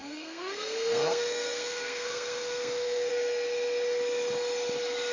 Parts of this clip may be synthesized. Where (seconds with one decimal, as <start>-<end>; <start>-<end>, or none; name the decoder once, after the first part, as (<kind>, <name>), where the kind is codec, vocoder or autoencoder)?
0.0-3.1 (codec, SNAC)